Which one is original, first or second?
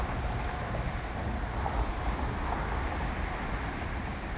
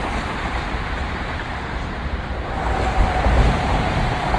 first